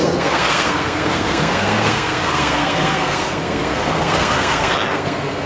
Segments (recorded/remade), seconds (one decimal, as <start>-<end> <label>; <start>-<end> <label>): 0.0-5.5 remade